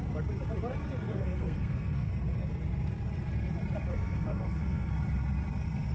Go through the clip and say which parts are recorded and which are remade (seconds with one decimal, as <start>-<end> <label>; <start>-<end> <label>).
0.0-1.1 recorded; 1.1-2.1 remade; 2.1-3.9 recorded; 3.9-4.9 remade; 4.9-5.9 recorded